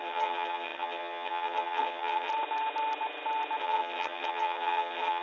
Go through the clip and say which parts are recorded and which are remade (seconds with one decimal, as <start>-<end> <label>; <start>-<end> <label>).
0.0-2.3 remade; 2.3-3.6 recorded; 3.6-5.2 remade